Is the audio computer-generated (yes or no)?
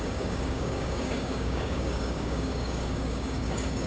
yes